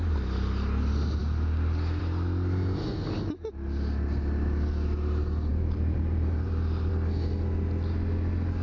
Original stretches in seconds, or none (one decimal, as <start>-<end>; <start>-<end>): 0.0-5.5; 6.9-8.6